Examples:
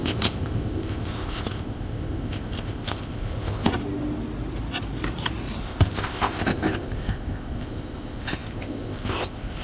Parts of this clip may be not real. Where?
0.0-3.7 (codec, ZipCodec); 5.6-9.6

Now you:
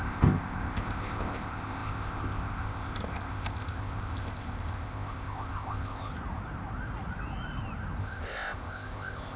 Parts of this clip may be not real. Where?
0.0-6.1 (codec, ZipCodec); 8.0-9.4

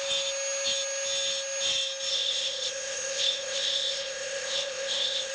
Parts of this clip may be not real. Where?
2.1-5.3 (codec, ZipCodec)

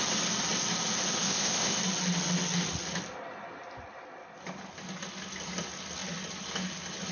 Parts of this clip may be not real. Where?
1.2-1.8 (codec, ZipCodec)

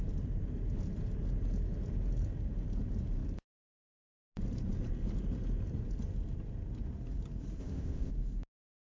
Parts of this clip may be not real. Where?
7.6-8.1 (codec, ZipCodec)

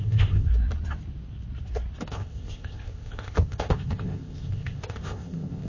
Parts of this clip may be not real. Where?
0.0-0.5 (codec, ZipCodec); 2.1-5.7

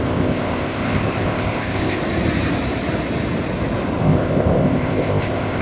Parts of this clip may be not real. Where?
0.0-2.0 (codec, ZipCodec); 4.0-5.6

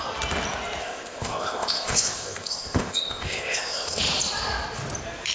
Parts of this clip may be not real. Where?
0.8-4.0 (codec, ZipCodec)